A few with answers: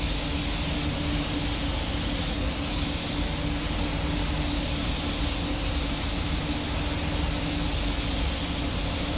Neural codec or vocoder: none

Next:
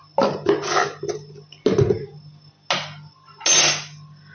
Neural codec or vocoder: none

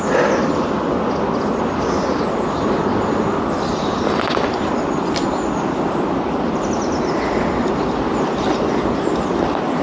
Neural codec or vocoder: none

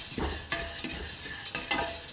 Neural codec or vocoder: none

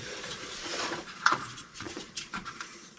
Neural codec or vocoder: vocoder, Vocos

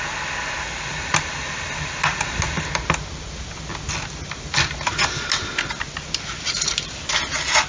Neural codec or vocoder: none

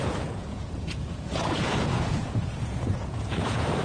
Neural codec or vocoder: vocoder, Vocos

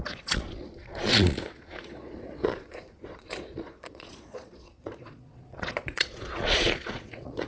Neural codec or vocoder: vocoder, Vocos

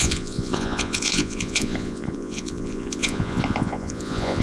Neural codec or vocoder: vocoder, Vocos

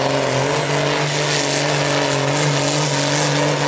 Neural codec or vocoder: none